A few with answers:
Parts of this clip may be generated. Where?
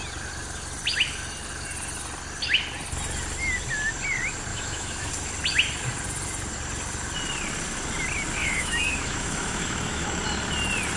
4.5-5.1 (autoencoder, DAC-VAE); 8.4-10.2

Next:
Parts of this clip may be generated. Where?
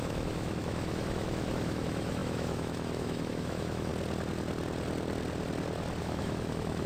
0.0-3.9 (autoencoder, DAC-VAE); 6.0-6.9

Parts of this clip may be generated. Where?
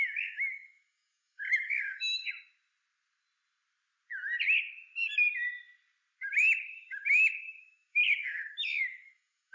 0.0-2.2 (autoencoder, DAC-VAE); 6.3-9.5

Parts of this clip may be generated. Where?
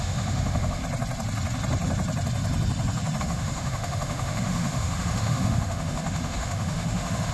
0.0-0.8 (autoencoder, DAC-VAE); 3.2-7.3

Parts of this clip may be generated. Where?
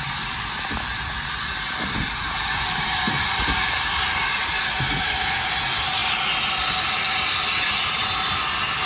none